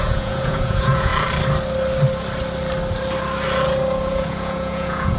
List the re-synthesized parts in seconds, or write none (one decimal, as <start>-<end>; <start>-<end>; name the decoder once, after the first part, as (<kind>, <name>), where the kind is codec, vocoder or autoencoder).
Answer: 0.0-1.1 (vocoder, Vocos); 4.1-5.2